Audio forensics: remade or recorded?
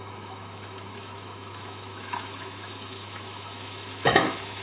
remade